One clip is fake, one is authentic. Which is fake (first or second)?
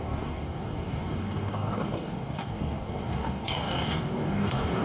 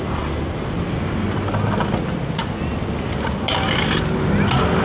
first